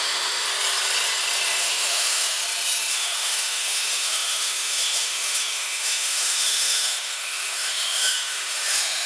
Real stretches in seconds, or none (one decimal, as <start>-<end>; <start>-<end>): 0.5-1.6; 2.4-2.9